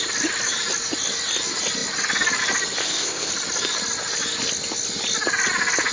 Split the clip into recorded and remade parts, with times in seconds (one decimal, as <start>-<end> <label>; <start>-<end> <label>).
0.0-2.8 recorded; 2.8-3.3 remade; 3.3-5.9 recorded

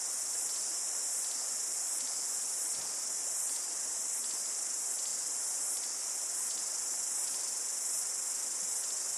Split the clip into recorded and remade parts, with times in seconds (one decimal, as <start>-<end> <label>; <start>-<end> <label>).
0.0-9.2 recorded

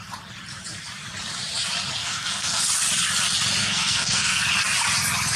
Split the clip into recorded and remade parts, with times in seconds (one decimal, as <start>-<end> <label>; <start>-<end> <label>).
0.0-2.0 recorded; 2.0-2.6 remade; 2.6-3.6 recorded; 3.6-4.4 remade; 4.4-5.4 recorded